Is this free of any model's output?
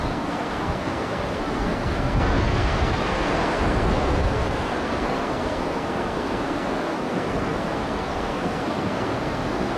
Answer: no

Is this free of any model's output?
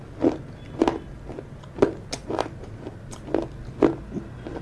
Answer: yes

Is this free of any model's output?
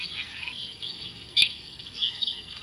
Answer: no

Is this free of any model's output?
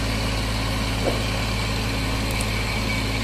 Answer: yes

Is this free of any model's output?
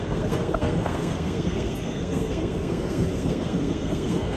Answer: no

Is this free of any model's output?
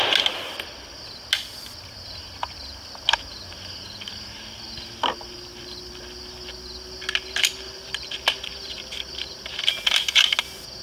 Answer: yes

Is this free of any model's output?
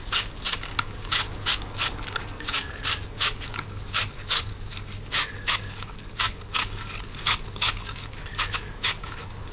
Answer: no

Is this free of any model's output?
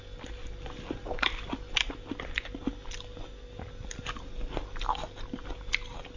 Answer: yes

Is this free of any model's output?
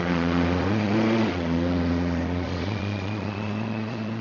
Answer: no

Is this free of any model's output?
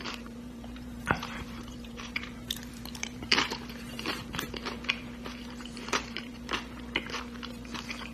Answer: no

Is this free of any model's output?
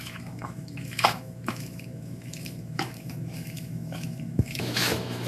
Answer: no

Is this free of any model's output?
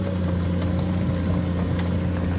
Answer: yes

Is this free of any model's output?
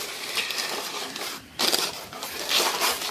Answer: no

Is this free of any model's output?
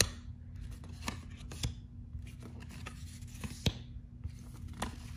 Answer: yes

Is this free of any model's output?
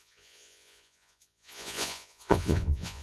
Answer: no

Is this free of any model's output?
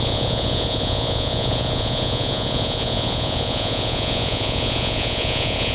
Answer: no